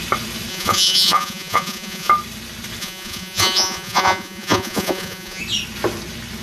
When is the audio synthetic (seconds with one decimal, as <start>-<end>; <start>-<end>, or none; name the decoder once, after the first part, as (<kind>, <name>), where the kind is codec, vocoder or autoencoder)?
0.5-2.1 (vocoder, Vocos); 2.8-5.4